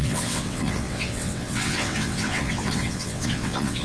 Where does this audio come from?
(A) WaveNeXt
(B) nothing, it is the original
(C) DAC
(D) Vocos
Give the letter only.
A